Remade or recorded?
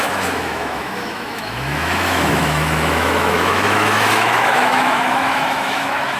remade